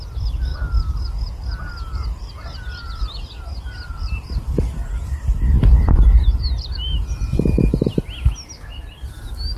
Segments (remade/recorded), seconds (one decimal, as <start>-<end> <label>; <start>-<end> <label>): 0.0-9.6 recorded